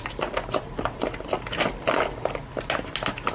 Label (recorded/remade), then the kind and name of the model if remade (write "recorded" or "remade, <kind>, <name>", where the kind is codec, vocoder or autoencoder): recorded